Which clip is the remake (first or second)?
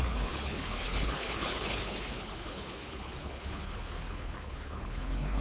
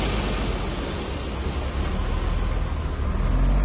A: first